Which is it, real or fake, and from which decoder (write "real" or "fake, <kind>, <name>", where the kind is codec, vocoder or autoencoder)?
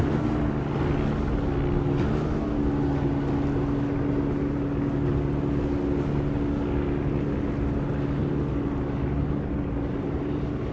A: real